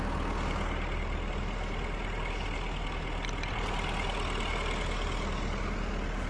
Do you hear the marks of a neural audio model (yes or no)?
no